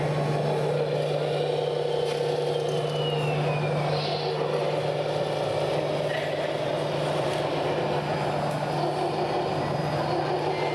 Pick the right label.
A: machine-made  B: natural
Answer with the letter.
B